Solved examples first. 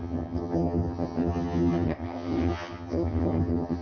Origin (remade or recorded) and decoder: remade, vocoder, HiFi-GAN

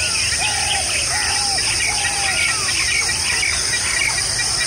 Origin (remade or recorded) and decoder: recorded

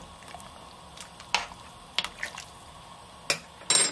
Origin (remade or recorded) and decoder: recorded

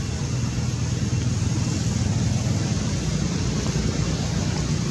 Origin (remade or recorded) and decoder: recorded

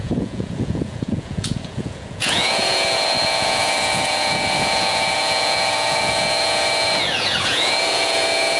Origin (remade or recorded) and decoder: remade, vocoder, Vocos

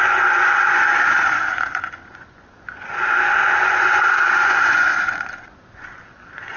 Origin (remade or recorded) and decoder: remade, vocoder, Vocos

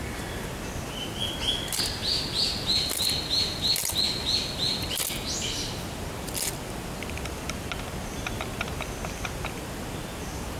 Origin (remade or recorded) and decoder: recorded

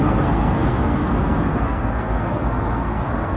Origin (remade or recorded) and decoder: remade, codec, SNAC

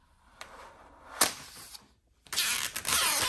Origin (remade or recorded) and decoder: recorded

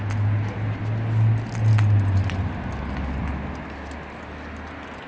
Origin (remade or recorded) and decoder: recorded